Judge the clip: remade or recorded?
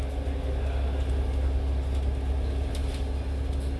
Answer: recorded